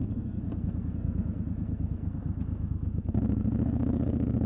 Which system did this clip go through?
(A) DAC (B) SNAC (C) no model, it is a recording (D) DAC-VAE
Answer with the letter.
B